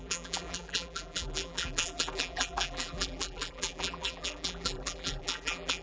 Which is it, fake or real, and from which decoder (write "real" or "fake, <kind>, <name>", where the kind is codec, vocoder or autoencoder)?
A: fake, vocoder, BigVGAN v2